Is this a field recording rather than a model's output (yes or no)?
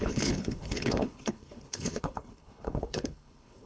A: no